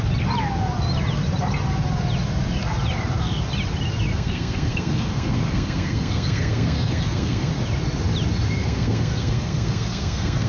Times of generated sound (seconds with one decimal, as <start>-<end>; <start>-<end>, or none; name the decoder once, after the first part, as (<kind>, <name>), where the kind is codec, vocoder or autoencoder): 4.1-7.5 (codec, SNAC); 8.6-10.5